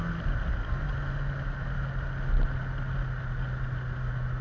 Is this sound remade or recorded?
recorded